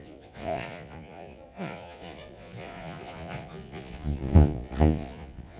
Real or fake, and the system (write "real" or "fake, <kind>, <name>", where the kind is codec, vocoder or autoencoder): fake, vocoder, Vocos